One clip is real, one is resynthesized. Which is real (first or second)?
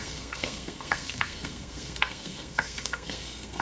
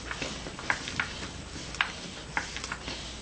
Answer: second